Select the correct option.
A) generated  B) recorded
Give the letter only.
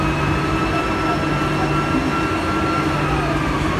B